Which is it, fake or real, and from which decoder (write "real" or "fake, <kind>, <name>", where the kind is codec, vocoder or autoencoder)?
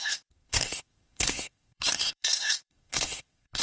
fake, codec, SNAC